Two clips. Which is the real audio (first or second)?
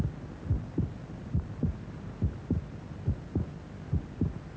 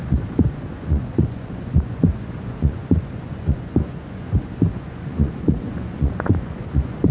first